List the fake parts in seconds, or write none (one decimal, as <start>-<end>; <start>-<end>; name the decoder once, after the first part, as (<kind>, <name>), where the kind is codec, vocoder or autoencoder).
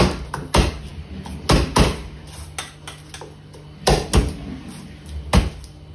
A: none